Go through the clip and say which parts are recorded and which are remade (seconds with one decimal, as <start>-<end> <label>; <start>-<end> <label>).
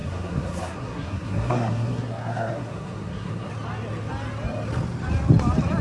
0.0-3.5 remade; 3.5-5.8 recorded